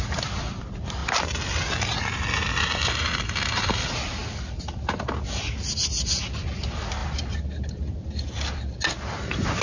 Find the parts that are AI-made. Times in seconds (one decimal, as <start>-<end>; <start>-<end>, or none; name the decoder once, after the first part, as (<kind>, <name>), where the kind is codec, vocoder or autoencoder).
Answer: none